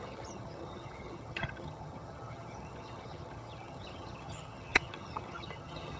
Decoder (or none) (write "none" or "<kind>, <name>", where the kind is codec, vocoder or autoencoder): vocoder, HiFi-GAN